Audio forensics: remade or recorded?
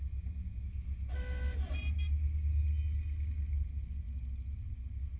recorded